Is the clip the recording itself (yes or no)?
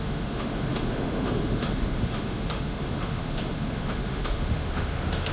no